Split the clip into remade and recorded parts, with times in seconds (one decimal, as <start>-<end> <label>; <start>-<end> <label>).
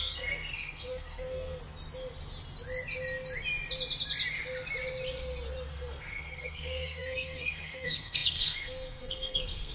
0.0-1.6 remade; 1.6-5.7 recorded; 5.7-9.7 remade